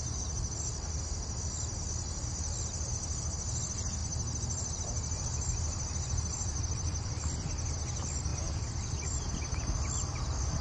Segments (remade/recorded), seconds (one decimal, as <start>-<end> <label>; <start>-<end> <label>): 0.0-4.0 recorded; 4.0-7.1 remade; 7.1-8.3 recorded; 8.3-9.9 remade; 9.9-10.6 recorded